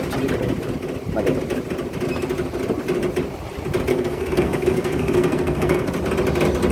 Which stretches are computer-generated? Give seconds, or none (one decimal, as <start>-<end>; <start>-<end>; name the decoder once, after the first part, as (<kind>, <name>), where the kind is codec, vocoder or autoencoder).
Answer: 3.9-5.9 (codec, SNAC)